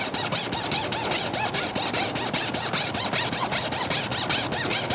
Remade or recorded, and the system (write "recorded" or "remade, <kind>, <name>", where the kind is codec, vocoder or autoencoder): recorded